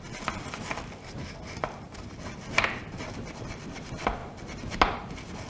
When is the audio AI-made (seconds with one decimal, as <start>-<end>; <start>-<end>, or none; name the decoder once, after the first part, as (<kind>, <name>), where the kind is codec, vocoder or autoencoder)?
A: none